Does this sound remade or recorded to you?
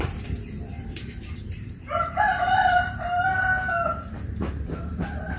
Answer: remade